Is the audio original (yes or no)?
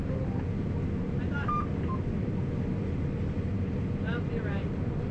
yes